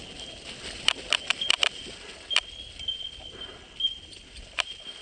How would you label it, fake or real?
real